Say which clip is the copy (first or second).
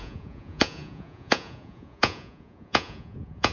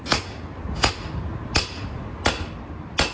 first